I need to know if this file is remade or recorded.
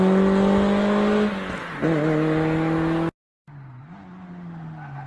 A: recorded